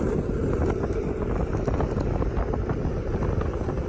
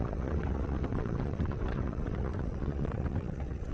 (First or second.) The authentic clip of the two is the first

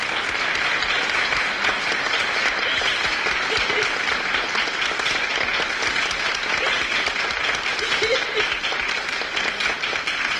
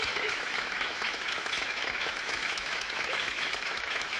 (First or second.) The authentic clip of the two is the first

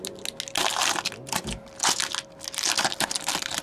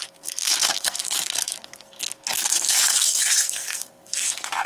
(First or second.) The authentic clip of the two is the first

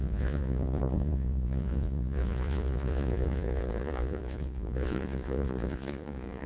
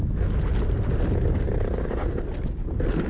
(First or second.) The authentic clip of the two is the second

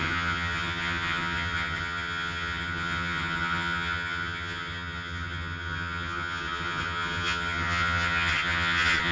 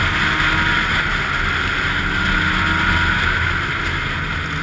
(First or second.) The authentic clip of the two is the second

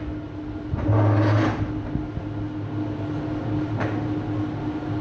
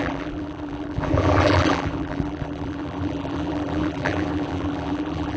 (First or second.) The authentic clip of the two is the first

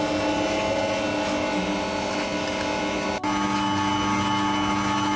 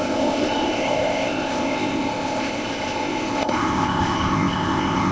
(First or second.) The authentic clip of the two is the first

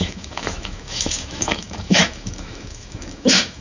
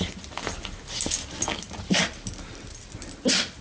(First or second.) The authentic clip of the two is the second